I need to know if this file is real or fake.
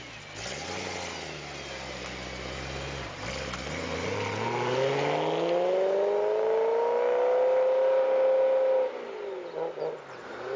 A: real